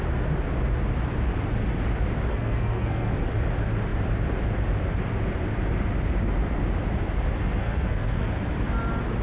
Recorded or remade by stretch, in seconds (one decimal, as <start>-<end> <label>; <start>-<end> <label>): 0.0-2.3 recorded; 2.3-3.3 remade; 3.3-7.4 recorded; 7.4-8.3 remade; 8.3-9.2 recorded